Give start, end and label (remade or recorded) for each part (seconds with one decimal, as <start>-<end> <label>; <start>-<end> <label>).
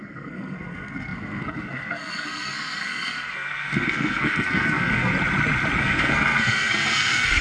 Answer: 0.0-5.1 remade; 5.1-5.8 recorded; 5.8-7.4 remade